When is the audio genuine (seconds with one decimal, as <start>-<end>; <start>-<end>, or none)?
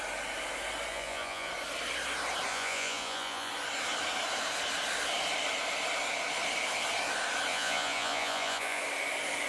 0.0-0.9; 1.5-2.5; 3.5-7.5; 8.8-9.5